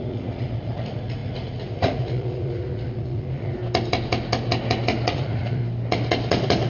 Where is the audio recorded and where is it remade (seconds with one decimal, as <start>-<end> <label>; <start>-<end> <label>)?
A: 0.0-3.6 remade; 3.6-5.1 recorded; 5.1-5.6 remade; 5.6-6.7 recorded